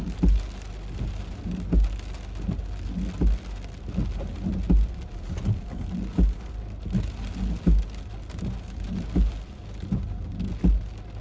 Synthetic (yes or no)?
no